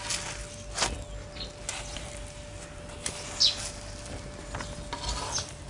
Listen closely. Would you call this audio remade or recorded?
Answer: recorded